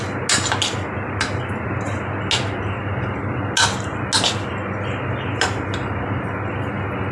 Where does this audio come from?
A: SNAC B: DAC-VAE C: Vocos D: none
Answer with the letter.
D